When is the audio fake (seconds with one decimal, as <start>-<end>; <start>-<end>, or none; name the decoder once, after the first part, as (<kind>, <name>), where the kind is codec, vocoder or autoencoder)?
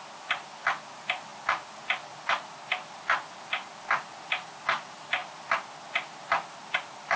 none